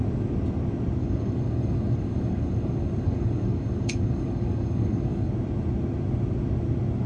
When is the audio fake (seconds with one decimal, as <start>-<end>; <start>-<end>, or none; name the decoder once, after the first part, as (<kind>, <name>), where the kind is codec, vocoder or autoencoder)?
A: 1.0-5.3 (codec, DAC)